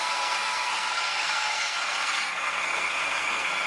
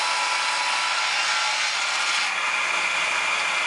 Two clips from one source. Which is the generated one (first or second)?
first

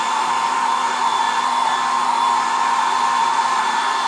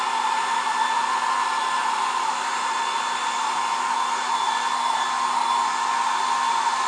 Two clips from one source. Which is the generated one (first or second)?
first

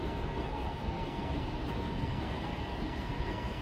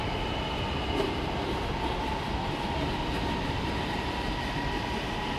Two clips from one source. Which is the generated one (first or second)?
first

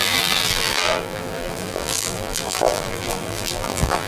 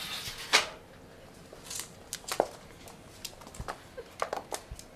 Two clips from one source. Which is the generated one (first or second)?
first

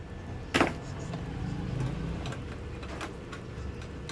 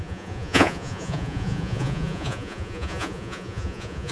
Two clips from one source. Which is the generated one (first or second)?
second